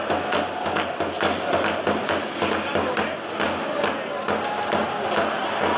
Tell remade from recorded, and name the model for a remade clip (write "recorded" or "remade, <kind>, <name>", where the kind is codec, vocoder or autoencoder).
recorded